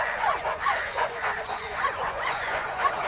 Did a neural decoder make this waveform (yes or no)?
yes